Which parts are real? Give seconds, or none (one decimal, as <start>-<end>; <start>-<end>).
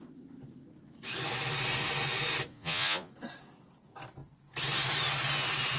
0.0-2.5; 3.1-5.8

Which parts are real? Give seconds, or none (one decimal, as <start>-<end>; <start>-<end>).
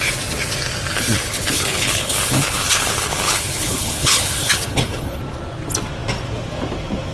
0.0-0.9; 5.2-7.1